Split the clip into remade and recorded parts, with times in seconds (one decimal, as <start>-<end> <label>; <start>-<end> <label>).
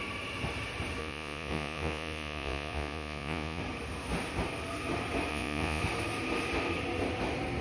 0.0-1.0 recorded; 1.0-3.6 remade; 3.6-5.3 recorded; 5.3-5.8 remade; 5.8-7.6 recorded